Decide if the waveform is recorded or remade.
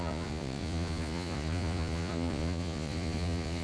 remade